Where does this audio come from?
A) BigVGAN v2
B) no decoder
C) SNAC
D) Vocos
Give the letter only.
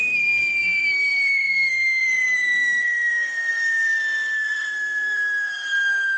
C